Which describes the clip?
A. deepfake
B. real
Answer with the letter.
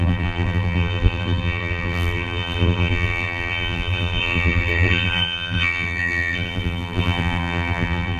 A